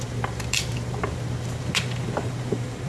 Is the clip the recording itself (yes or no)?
no